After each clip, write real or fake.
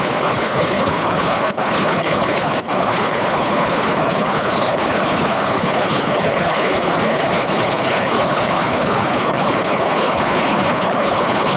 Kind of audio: fake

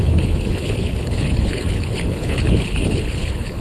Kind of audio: fake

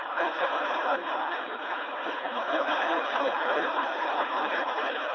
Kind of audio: fake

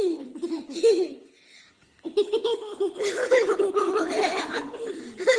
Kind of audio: fake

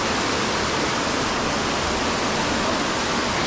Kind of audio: real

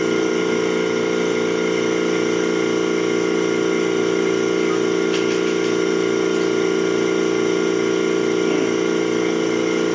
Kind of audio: real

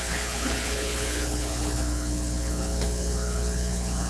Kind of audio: fake